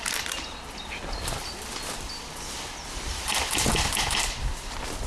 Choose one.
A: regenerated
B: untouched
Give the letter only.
B